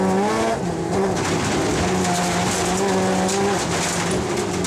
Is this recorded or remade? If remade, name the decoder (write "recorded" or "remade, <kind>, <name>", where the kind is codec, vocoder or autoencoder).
recorded